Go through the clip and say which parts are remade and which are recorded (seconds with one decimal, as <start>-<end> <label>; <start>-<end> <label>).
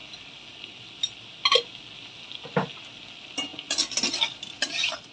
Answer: 0.0-5.1 recorded